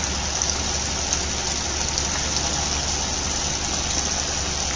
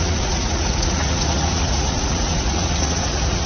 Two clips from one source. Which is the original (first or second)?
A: first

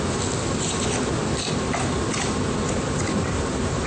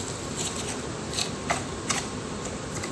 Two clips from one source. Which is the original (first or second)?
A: first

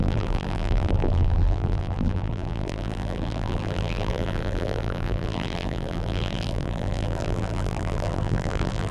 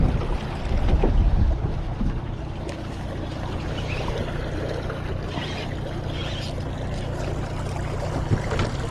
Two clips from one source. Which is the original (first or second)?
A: second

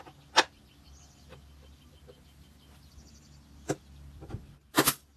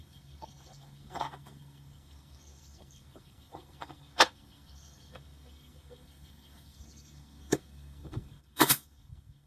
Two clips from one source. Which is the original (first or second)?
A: first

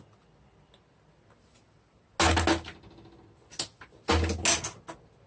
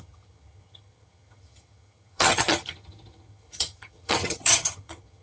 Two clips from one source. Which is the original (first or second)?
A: first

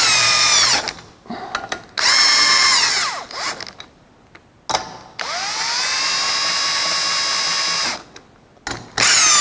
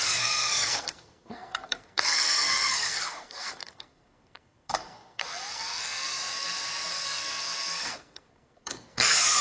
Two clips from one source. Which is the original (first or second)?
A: first